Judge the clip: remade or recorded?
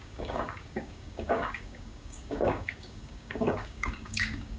remade